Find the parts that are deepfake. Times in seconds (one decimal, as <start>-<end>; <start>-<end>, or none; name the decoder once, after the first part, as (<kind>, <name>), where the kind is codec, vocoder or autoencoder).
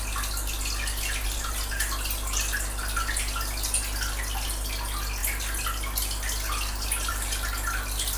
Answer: none